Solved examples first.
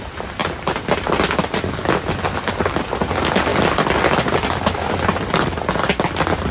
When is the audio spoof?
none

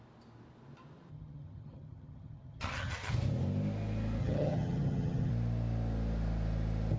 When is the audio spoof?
1.1-3.1 (vocoder, HiFi-GAN); 4.2-5.3

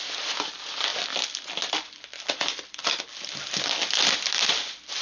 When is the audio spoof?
none

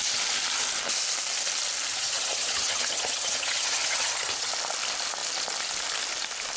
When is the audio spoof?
1.9-4.5 (vocoder, HiFi-GAN)

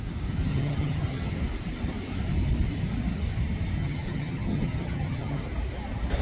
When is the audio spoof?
0.5-1.3 (vocoder, HiFi-GAN); 3.8-5.4

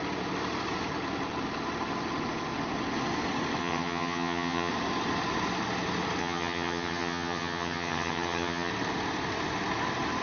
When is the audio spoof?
3.6-4.7 (vocoder, HiFi-GAN); 6.2-8.7